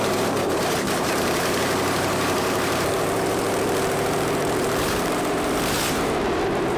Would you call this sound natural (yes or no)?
no